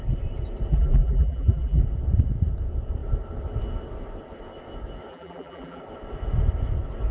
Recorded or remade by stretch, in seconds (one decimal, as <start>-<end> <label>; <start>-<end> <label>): 0.0-0.7 recorded; 0.7-1.8 remade; 1.8-5.1 recorded; 5.1-5.8 remade; 5.8-7.1 recorded